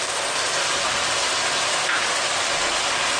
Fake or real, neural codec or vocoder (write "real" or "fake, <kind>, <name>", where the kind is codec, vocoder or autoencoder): real